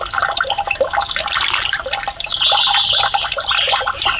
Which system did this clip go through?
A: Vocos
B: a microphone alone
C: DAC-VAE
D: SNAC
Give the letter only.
B